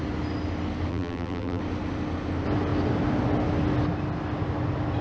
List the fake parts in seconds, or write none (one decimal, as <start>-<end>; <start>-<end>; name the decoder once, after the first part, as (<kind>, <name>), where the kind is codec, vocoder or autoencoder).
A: 0.9-1.6 (vocoder, BigVGAN v2)